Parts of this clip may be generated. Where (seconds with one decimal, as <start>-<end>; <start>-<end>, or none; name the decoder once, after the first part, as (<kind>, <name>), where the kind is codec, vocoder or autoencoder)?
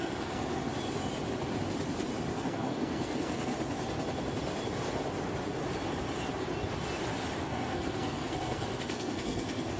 0.0-0.7 (codec, SNAC); 2.3-3.5; 7.4-9.8